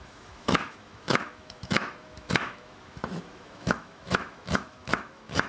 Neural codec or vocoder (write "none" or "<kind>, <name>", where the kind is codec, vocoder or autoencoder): autoencoder, DAC-VAE